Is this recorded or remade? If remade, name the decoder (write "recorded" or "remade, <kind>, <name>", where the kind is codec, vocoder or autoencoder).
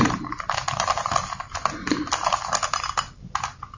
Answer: recorded